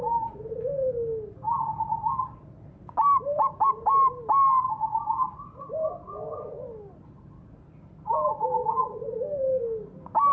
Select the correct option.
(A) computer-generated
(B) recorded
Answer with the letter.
B